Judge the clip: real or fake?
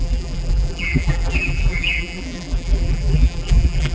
fake